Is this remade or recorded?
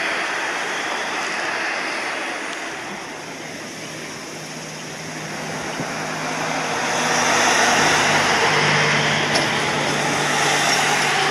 recorded